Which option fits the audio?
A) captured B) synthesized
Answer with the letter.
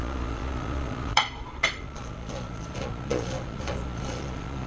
B